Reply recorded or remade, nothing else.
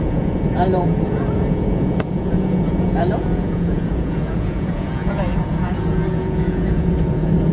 remade